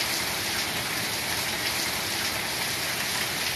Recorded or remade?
recorded